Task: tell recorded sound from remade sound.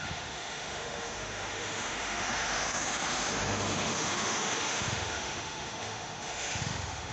remade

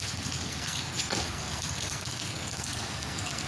remade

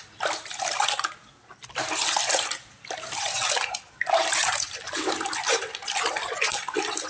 recorded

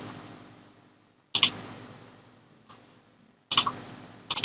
recorded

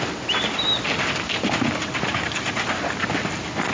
recorded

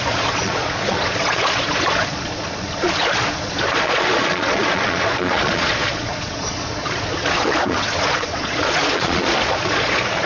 remade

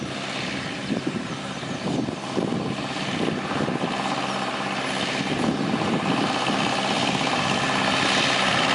recorded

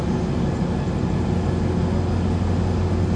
recorded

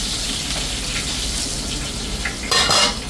recorded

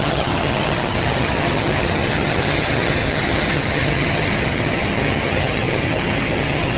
remade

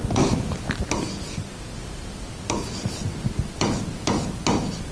recorded